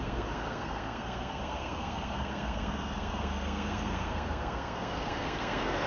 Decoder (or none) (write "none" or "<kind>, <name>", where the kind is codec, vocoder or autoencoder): codec, SNAC